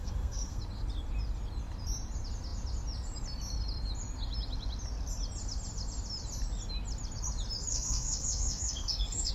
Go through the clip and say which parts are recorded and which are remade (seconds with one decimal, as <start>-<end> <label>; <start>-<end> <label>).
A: 0.0-0.6 remade; 0.6-7.7 recorded; 7.7-9.3 remade